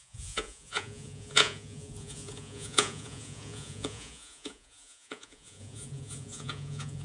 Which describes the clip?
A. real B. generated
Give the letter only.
B